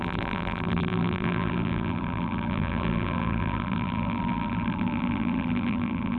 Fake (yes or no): yes